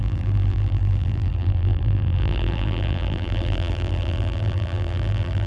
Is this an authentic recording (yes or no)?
no